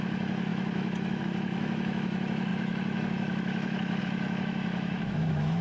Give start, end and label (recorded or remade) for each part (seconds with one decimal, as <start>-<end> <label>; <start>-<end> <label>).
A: 0.0-5.6 remade